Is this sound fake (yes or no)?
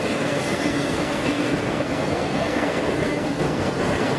yes